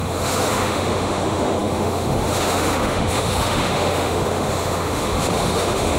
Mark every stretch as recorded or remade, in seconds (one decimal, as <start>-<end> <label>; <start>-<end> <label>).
0.0-6.0 remade